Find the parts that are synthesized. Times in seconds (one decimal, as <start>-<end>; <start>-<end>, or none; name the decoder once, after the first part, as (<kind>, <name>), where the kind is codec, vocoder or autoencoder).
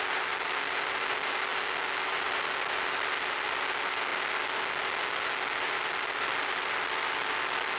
0.0-1.5 (vocoder, BigVGAN v2); 2.1-4.1; 5.6-7.8